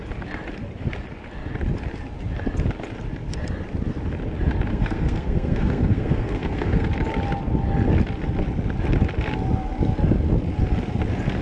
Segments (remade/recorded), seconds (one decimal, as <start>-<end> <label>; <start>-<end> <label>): 0.0-4.7 recorded; 4.7-6.9 remade; 6.9-11.4 recorded